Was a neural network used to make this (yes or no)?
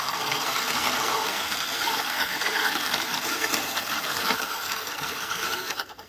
yes